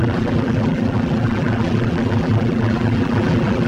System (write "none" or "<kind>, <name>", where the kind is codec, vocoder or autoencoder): vocoder, BigVGAN v2